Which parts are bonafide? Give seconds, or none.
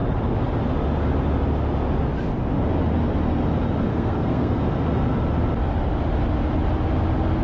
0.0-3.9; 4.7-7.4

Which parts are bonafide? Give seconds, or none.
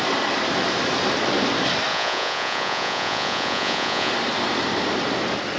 0.0-1.9; 4.1-5.6